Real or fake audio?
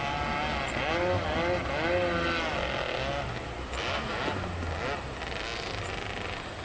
real